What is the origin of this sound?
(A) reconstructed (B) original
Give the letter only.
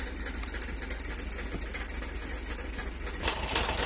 B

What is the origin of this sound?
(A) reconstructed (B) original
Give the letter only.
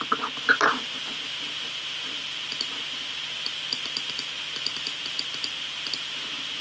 B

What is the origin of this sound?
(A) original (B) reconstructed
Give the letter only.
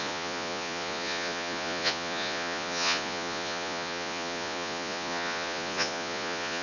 B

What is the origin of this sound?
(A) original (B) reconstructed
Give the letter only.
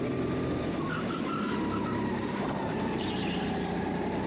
B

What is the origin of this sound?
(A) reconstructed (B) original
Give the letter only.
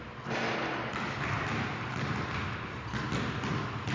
B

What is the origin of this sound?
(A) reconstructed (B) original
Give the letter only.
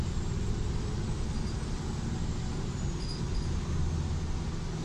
B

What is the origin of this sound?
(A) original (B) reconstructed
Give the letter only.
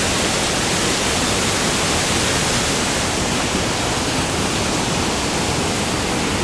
A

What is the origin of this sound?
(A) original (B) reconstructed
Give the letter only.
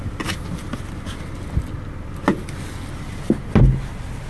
A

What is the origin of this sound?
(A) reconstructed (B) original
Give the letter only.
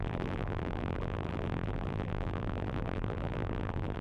A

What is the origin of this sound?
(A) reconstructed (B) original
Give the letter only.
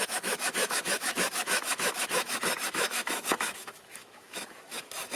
A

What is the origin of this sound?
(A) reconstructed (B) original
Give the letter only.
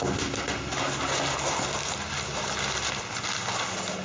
B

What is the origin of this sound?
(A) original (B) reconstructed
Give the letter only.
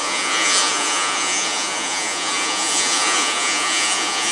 B